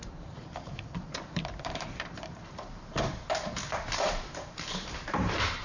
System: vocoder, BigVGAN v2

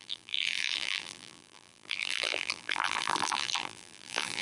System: vocoder, BigVGAN v2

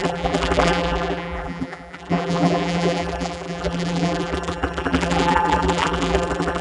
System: vocoder, BigVGAN v2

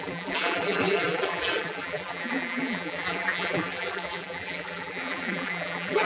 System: vocoder, BigVGAN v2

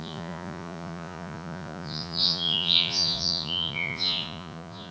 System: vocoder, Vocos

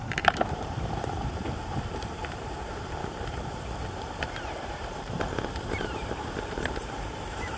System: vocoder, BigVGAN v2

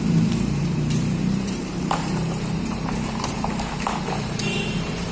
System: vocoder, BigVGAN v2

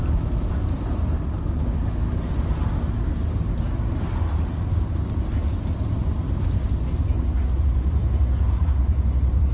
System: none